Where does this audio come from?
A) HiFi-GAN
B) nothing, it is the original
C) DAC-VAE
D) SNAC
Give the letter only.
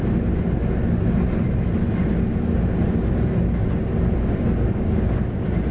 B